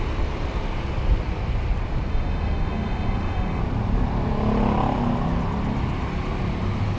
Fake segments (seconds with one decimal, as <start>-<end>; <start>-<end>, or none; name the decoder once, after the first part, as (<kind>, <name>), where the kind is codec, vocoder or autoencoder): 2.1-3.6 (autoencoder, DAC-VAE)